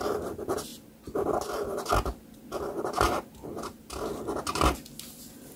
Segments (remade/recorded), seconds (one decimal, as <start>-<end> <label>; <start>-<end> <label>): 0.0-5.6 recorded